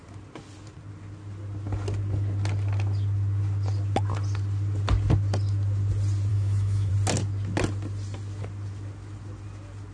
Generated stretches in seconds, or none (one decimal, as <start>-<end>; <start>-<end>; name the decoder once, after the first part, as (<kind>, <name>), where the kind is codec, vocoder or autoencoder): 6.3-6.9 (autoencoder, DAC-VAE)